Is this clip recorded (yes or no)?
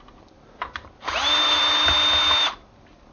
yes